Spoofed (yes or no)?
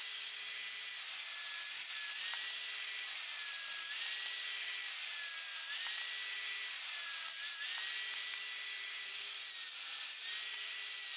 no